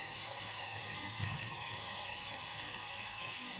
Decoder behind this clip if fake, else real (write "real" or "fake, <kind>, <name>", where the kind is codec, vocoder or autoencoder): fake, codec, SNAC